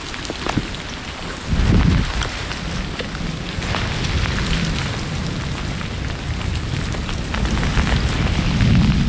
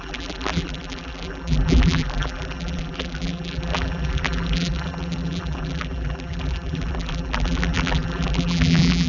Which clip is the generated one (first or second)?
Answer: second